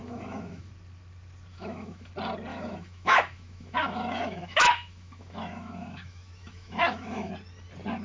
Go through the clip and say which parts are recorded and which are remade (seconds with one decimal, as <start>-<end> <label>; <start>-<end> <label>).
0.0-0.7 remade; 0.7-1.5 recorded; 1.5-2.1 remade; 2.1-2.5 recorded; 2.5-7.3 remade; 7.3-8.0 recorded